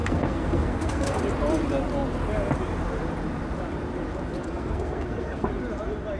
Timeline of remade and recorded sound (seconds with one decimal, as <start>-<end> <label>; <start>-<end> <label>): 0.0-1.2 remade; 1.2-4.4 recorded; 4.4-5.5 remade; 5.5-6.2 recorded